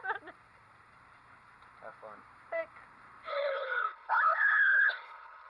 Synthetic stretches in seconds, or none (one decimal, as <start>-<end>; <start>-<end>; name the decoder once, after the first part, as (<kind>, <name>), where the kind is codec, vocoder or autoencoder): 3.3-5.5 (codec, HILCodec)